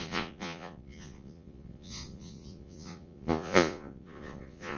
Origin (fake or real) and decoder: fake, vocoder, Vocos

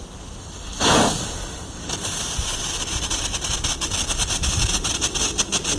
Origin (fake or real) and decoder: real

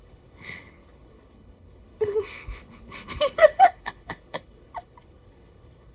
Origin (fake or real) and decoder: fake, codec, HILCodec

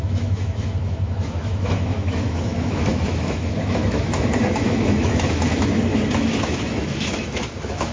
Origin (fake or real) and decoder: fake, autoencoder, DAC-VAE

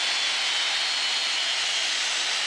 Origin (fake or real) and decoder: real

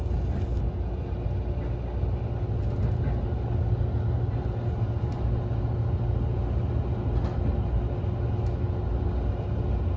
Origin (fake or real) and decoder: real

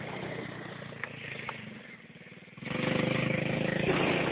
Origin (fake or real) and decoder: real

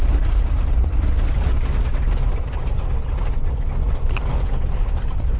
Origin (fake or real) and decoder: real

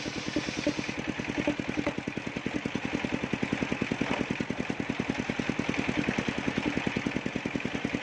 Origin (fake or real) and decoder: real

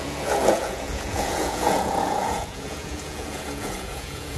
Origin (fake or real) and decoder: fake, vocoder, Vocos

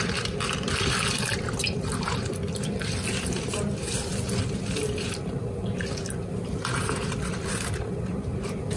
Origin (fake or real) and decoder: fake, vocoder, BigVGAN v2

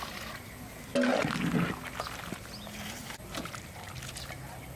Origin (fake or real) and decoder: real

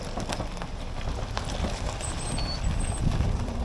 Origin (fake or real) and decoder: fake, vocoder, BigVGAN v2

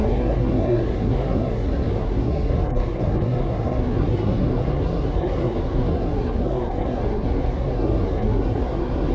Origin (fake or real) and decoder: fake, codec, SNAC